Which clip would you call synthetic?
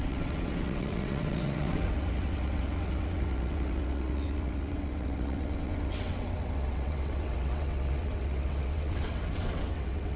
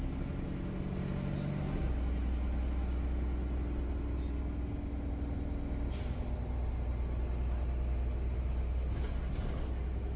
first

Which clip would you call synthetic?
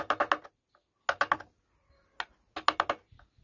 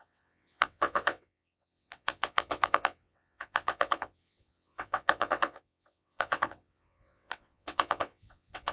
second